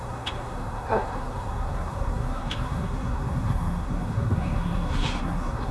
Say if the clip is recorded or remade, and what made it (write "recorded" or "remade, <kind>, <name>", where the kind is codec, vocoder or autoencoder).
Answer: remade, codec, SNAC